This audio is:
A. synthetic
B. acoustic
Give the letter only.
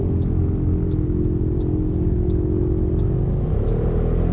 B